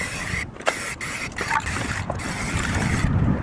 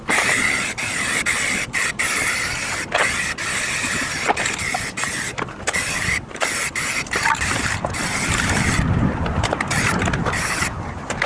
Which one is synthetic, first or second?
second